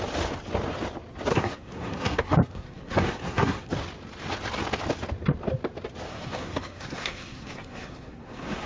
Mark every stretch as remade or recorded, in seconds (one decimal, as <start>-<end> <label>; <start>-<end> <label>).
0.0-1.3 recorded; 1.3-3.7 remade; 3.7-6.1 recorded; 6.1-8.7 remade